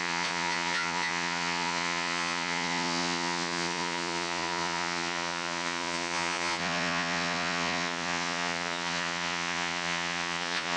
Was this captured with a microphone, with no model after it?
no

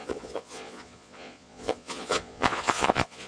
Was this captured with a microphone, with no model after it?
no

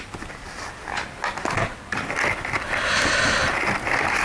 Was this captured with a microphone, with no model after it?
yes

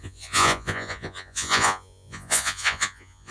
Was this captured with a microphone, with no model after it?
no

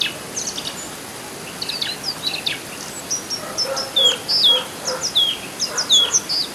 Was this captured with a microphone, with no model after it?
yes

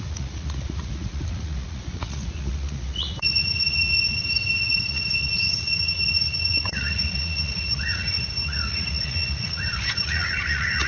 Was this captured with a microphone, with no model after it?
no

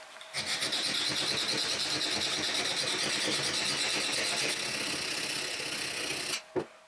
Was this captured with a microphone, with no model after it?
yes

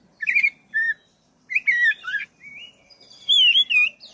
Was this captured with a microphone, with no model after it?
yes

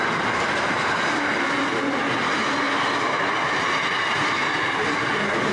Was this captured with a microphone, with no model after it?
yes